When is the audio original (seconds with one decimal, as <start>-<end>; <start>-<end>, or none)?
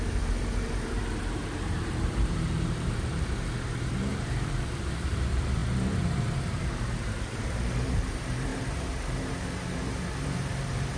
8.5-9.2